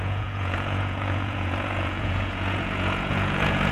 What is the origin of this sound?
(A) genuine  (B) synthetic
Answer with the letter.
B